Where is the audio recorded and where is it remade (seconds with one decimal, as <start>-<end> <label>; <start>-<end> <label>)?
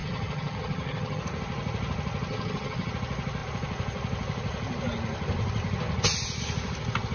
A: 0.0-1.2 remade; 1.2-2.3 recorded; 2.3-2.9 remade; 2.9-7.1 recorded